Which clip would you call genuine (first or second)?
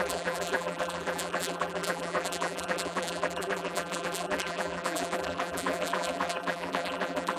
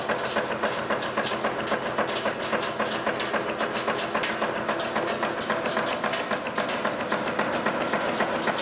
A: second